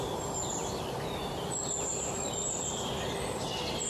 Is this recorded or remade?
recorded